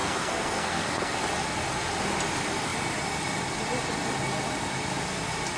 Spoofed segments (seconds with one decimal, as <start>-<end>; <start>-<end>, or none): 0.0-1.2